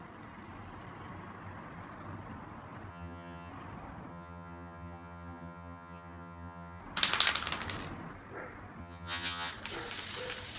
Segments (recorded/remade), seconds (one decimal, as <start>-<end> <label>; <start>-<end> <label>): 0.0-2.9 recorded; 2.9-3.5 remade; 3.5-4.1 recorded; 4.1-6.8 remade; 6.8-8.8 recorded; 8.8-9.5 remade; 9.5-10.6 recorded